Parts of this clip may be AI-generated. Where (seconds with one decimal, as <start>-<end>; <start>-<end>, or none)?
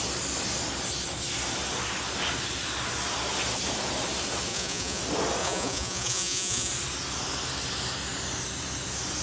4.5-5.0; 5.4-6.7